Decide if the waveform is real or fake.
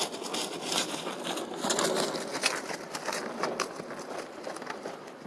real